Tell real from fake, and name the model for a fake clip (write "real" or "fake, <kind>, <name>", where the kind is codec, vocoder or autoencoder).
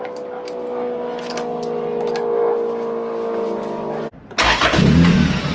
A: real